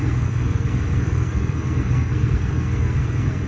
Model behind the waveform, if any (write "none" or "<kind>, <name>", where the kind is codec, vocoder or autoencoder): codec, SNAC